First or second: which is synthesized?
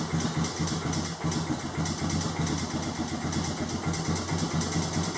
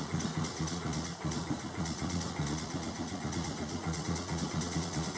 second